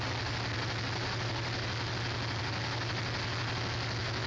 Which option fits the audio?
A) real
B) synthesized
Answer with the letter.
A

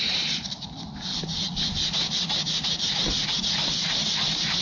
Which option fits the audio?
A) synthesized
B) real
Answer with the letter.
B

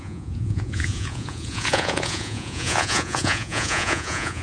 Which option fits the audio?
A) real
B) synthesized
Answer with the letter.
B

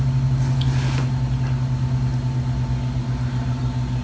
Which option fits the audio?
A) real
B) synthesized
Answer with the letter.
A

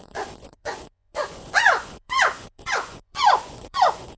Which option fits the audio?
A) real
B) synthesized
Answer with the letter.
B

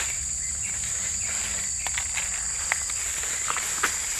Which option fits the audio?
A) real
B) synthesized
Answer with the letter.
A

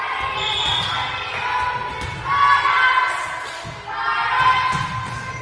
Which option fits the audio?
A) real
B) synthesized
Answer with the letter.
A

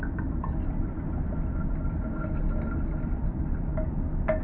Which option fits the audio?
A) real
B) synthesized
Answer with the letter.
A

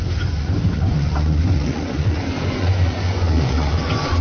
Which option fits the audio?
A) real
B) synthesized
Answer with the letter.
B